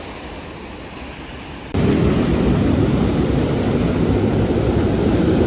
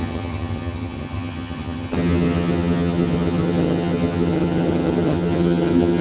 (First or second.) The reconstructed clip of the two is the second